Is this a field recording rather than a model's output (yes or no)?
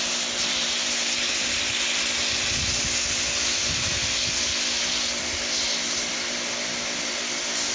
yes